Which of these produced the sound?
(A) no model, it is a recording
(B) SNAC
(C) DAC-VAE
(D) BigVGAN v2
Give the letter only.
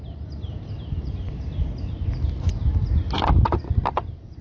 A